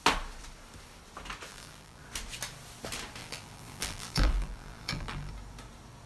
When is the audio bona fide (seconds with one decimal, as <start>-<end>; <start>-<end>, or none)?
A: 0.0-1.5; 2.0-3.2; 5.3-6.1